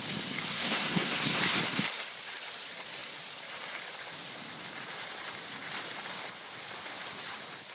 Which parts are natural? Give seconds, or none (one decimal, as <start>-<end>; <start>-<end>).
0.0-0.5; 1.4-7.7